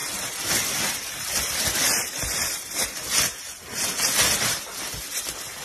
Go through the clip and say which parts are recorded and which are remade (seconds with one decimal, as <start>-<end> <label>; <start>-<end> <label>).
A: 0.0-3.4 remade; 3.4-5.6 recorded